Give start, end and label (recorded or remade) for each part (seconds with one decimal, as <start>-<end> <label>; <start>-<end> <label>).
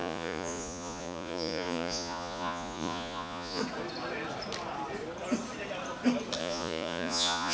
0.0-3.6 remade; 3.6-6.4 recorded; 6.4-7.5 remade